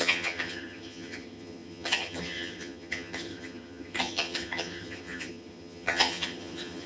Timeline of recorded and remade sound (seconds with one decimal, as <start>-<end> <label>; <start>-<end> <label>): 0.0-6.9 remade

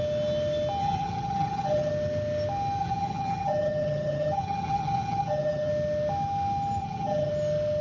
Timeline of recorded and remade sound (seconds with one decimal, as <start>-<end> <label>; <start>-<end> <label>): 0.0-0.8 recorded; 0.8-1.9 remade; 1.9-2.8 recorded; 2.8-5.7 remade; 5.7-6.8 recorded; 6.8-7.3 remade; 7.3-7.8 recorded